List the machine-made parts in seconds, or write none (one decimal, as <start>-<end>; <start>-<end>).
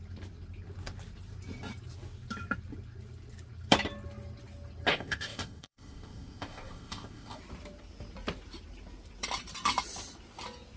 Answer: 4.9-7.4